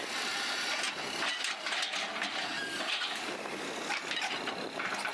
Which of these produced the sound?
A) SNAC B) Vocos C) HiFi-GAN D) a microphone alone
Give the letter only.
D